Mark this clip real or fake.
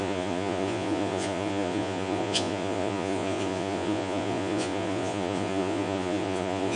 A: fake